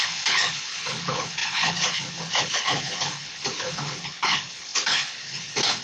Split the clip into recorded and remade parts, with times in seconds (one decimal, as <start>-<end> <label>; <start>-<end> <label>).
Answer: 0.0-5.8 remade